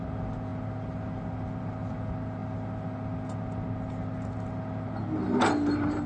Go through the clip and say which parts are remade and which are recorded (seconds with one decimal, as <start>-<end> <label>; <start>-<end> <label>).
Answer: 0.0-6.1 recorded